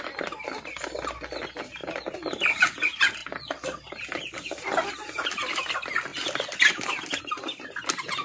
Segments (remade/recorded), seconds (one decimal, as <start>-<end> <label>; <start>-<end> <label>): 0.0-8.2 recorded

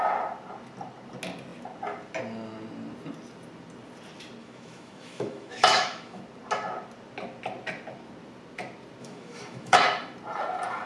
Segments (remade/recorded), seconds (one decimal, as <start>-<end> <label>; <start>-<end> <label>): 0.0-4.4 recorded; 4.4-6.2 remade; 6.2-9.0 recorded; 9.0-9.8 remade; 9.8-10.9 recorded

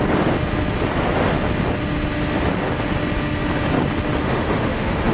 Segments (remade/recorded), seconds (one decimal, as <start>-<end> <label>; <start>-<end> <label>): 0.0-4.2 recorded; 4.2-5.1 remade

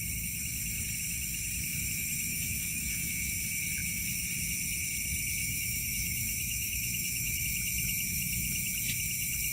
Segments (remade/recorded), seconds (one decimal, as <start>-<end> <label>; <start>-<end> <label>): 0.0-2.3 recorded; 2.3-3.2 remade; 3.2-5.4 recorded; 5.4-7.4 remade; 7.4-9.5 recorded

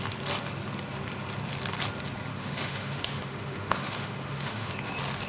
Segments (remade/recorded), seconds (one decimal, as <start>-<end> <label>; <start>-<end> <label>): 0.0-2.3 recorded; 2.3-4.7 remade; 4.7-5.3 recorded